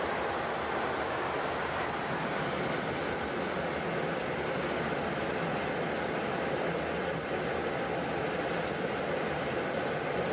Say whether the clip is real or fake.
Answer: real